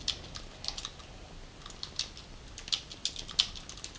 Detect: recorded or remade recorded